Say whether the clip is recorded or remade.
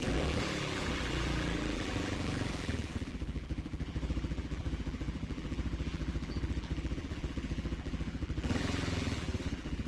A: remade